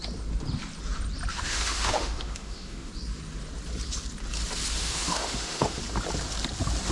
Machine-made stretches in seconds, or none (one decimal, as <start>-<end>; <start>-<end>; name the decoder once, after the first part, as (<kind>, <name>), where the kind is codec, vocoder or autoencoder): 1.3-2.9 (autoencoder, DAC-VAE); 4.8-5.8

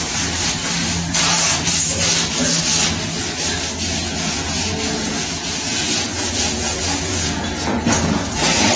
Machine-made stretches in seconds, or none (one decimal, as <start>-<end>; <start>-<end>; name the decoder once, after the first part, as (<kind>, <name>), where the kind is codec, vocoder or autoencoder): 3.9-8.8 (vocoder, Vocos)

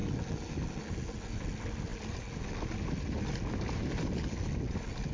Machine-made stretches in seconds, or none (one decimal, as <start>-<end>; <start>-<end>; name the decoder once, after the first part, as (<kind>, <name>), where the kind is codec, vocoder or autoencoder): none

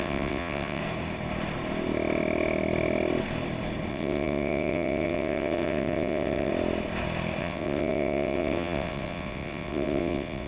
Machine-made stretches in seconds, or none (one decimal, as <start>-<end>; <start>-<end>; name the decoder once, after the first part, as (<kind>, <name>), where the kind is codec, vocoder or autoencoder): 0.0-0.8 (vocoder, WaveNeXt); 3.9-6.5; 7.4-10.5

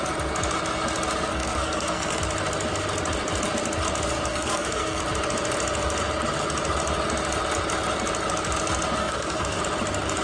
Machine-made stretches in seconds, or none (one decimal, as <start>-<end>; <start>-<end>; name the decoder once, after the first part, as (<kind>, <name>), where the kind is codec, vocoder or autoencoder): 1.3-2.2 (codec, SNAC); 4.3-5.0; 9.0-9.6

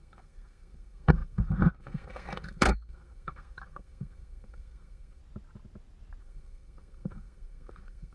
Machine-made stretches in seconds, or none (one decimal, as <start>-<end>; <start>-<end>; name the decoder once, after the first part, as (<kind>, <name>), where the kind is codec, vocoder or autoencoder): 0.0-5.2 (codec, SNAC); 6.2-8.1